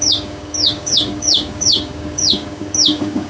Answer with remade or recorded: remade